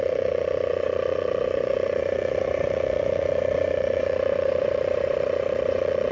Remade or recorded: remade